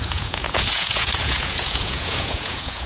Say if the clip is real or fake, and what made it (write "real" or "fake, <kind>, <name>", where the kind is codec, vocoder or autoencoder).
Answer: fake, vocoder, Vocos